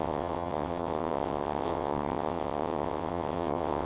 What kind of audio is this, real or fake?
fake